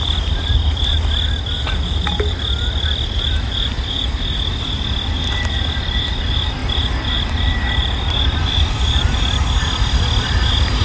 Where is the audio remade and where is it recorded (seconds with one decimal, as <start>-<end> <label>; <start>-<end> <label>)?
0.0-10.8 recorded